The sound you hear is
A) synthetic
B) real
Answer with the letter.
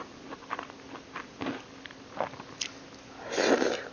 B